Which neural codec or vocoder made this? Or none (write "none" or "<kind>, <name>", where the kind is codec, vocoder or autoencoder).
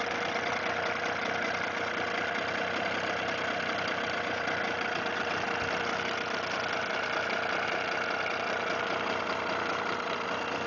none